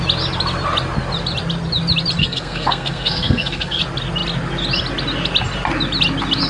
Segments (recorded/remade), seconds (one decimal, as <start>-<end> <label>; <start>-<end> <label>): 0.0-2.2 recorded; 2.2-3.8 remade; 3.8-6.5 recorded